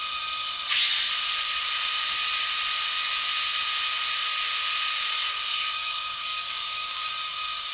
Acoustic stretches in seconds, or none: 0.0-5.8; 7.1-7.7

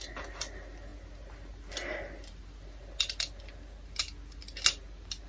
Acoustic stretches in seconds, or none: 0.0-5.3